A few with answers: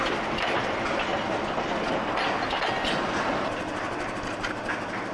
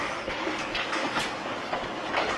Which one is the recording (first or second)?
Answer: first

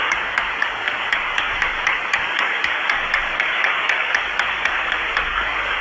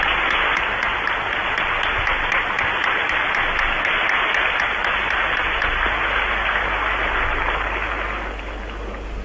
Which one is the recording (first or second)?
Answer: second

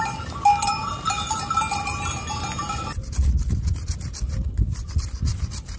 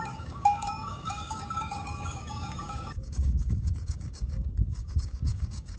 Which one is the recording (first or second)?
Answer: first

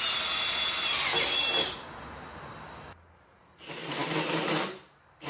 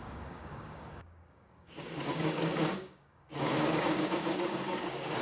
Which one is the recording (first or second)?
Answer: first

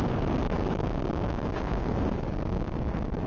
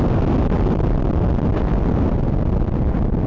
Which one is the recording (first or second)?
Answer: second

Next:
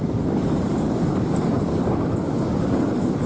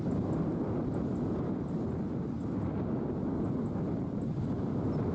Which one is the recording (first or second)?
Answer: second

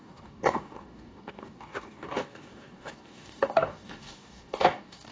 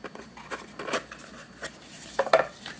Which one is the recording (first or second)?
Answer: second